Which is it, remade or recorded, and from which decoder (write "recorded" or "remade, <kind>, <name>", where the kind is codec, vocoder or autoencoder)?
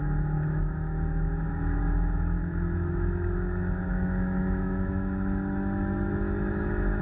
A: remade, autoencoder, DAC-VAE